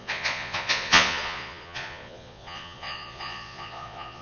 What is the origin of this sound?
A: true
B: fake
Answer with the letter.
B